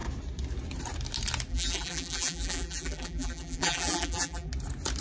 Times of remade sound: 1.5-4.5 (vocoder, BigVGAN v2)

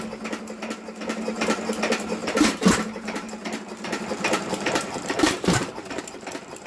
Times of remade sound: 2.2-6.0 (vocoder, BigVGAN v2)

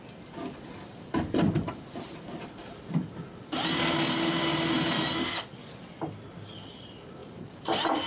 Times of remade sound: 0.9-2.6 (vocoder, BigVGAN v2); 7.2-8.1

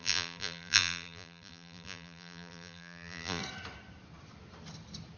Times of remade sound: 0.0-3.4 (vocoder, BigVGAN v2)

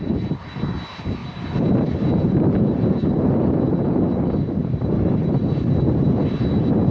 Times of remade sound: 1.2-3.3 (vocoder, BigVGAN v2); 4.6-5.4